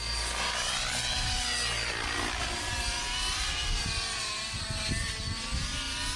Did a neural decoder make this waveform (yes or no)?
no